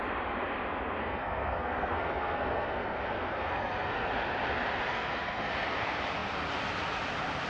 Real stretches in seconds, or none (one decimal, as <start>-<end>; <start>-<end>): 0.0-1.0; 4.1-4.9; 5.5-7.5